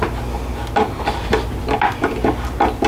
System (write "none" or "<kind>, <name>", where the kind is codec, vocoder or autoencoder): none